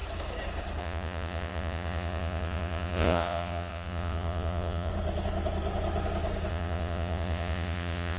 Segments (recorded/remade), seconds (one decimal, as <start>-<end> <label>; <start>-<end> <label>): 0.0-0.8 recorded; 0.8-4.9 remade; 4.9-6.5 recorded; 6.5-8.2 remade